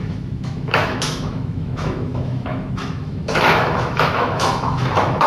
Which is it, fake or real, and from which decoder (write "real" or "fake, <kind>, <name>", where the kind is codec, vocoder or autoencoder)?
fake, autoencoder, DAC-VAE